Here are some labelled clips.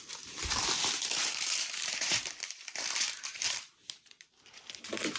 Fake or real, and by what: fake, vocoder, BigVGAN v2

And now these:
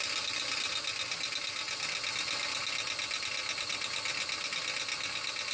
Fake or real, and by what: real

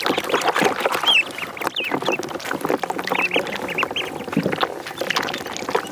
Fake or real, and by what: real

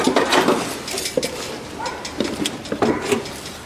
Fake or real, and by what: real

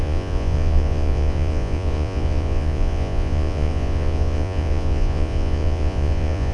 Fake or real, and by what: fake, vocoder, Vocos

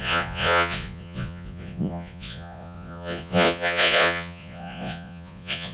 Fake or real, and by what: fake, vocoder, Vocos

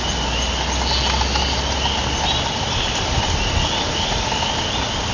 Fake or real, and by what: real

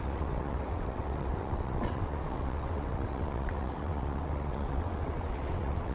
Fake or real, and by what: fake, vocoder, WaveNeXt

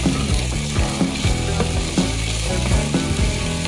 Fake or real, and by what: real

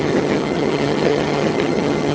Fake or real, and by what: fake, vocoder, HiFi-GAN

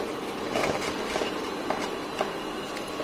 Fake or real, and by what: real